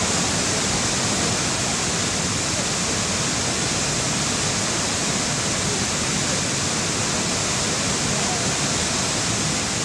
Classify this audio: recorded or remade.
recorded